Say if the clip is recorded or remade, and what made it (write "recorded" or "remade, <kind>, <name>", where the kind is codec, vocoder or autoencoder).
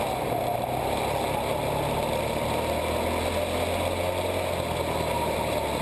recorded